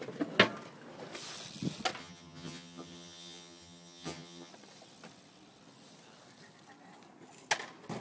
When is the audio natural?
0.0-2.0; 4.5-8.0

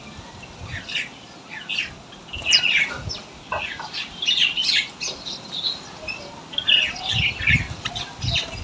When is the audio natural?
0.0-8.6

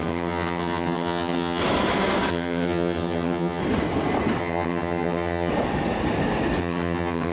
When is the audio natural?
1.6-2.3; 3.6-4.4; 5.5-6.6

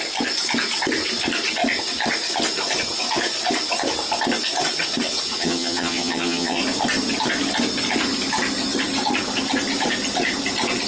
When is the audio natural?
0.0-5.4; 6.6-10.9

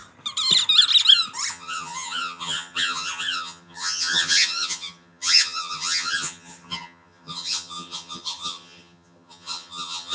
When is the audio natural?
0.0-1.5

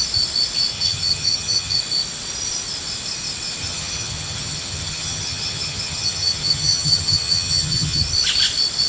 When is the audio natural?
0.0-0.7; 1.8-3.6; 8.0-8.9

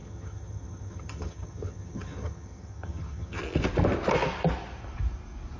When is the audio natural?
3.4-5.6